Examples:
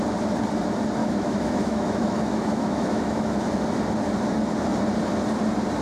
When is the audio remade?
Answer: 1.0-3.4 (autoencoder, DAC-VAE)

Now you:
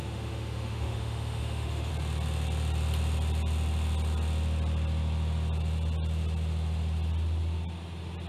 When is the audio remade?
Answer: 0.0-1.9 (autoencoder, DAC-VAE)

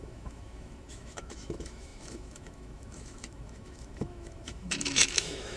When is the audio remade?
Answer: 0.0-5.6 (autoencoder, DAC-VAE)

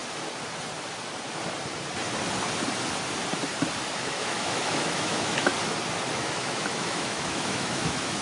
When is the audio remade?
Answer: 3.9-5.5 (autoencoder, DAC-VAE); 6.1-8.2

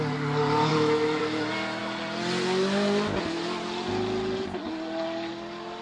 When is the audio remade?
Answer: 0.7-1.2 (autoencoder, DAC-VAE)

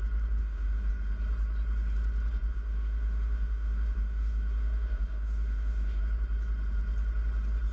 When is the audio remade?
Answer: 0.4-0.9 (autoencoder, DAC-VAE); 2.5-6.0

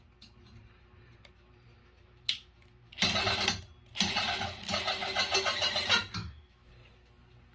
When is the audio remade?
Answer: 1.8-2.9 (autoencoder, DAC-VAE); 6.2-6.7